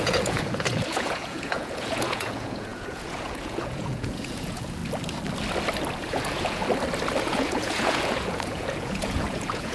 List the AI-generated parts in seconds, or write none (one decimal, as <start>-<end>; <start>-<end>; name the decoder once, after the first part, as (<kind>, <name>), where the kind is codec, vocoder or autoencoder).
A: 0.0-4.8 (vocoder, Vocos); 6.0-6.6; 7.2-9.7